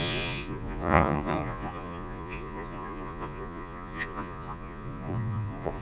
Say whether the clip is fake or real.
fake